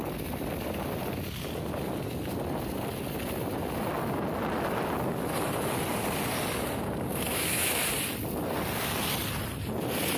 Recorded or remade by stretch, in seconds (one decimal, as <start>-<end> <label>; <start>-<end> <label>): 0.0-7.3 recorded; 7.3-7.8 remade; 7.8-10.2 recorded